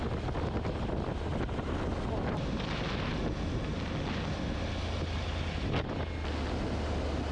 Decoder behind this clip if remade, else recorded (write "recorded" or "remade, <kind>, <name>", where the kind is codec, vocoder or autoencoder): recorded